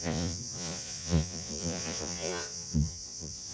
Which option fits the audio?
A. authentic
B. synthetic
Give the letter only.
B